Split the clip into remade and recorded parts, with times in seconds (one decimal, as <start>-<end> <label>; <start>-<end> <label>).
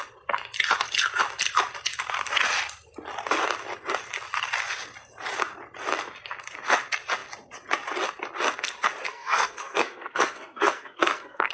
0.0-9.1 recorded; 9.1-11.5 remade